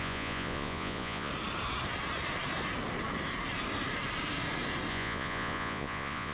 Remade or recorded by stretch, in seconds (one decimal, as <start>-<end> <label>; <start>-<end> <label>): 0.0-1.3 remade; 1.3-4.9 recorded; 4.9-6.3 remade